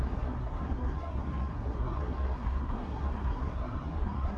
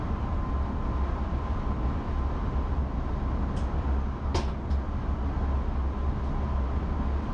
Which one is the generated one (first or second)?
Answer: first